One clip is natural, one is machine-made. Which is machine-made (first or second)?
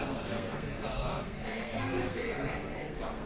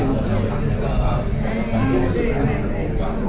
first